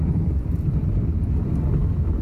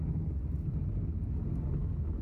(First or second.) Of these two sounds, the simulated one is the first